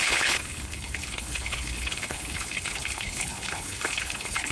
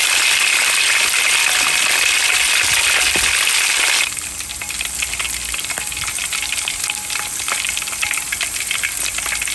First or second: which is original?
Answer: second